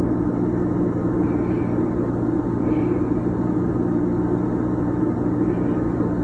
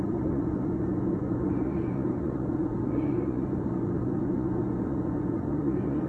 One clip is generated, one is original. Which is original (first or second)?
first